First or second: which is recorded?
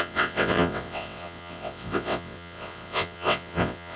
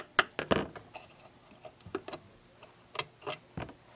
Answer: second